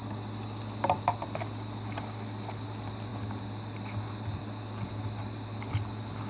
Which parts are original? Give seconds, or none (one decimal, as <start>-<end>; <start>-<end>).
0.0-6.3

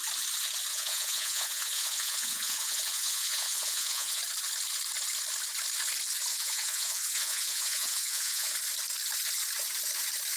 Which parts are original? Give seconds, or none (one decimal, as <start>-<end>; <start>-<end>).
0.0-0.7; 4.2-6.3; 8.5-10.4